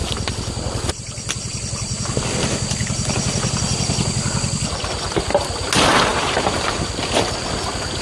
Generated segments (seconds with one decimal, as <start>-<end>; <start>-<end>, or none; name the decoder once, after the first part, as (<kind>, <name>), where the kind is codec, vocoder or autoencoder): 2.8-3.6 (vocoder, BigVGAN v2); 6.1-6.9